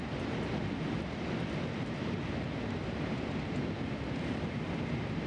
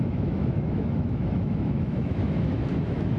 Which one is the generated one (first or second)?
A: second